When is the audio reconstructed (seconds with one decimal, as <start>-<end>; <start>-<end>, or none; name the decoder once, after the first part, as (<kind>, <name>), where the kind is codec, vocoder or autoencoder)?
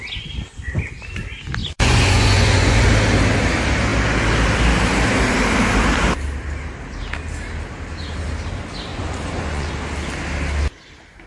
1.6-2.9 (vocoder, Vocos); 8.9-9.7